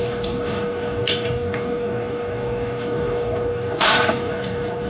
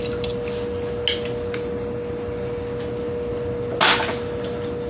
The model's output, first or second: first